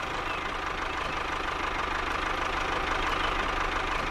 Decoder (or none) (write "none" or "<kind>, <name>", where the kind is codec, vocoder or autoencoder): none